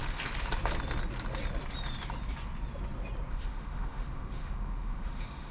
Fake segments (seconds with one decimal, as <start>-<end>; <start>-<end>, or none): 3.3-5.5